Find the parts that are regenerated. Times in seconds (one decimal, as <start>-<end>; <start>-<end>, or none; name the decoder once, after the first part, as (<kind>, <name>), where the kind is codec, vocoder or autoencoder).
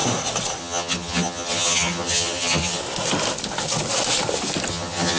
0.6-2.8 (vocoder, HiFi-GAN); 4.7-5.2